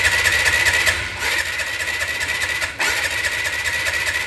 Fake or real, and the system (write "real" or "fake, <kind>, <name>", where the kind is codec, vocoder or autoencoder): real